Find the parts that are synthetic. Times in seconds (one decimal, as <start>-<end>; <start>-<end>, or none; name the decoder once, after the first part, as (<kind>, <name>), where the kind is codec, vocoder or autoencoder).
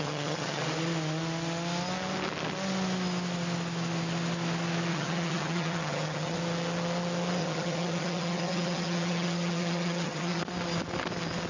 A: 0.0-0.6 (vocoder, HiFi-GAN); 4.9-6.4; 7.4-10.4